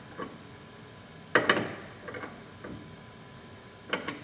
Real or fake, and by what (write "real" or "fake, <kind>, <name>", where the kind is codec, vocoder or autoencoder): real